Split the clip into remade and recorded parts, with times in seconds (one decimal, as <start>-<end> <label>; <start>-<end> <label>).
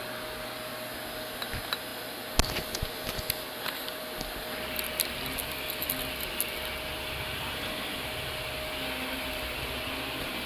0.0-10.5 recorded